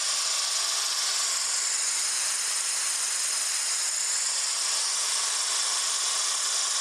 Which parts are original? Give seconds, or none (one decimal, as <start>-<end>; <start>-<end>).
0.0-6.8